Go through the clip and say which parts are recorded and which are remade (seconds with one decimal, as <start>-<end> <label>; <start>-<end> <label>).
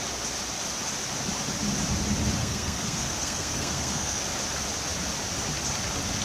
0.0-2.4 recorded; 2.4-4.2 remade; 4.2-6.2 recorded